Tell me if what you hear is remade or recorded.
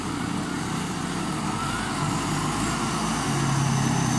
recorded